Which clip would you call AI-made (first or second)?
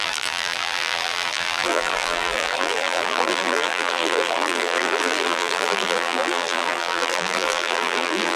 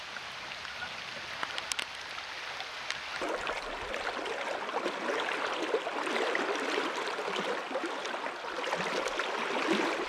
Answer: first